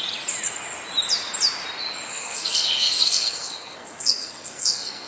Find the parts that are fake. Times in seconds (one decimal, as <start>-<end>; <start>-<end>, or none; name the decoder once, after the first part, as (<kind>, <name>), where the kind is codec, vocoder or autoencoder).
2.1-5.1 (codec, SNAC)